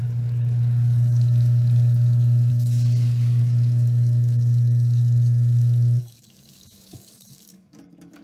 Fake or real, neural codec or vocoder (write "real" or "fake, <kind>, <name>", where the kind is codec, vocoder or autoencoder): fake, codec, DAC